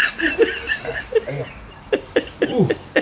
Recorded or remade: recorded